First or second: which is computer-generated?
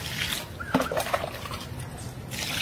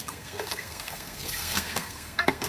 second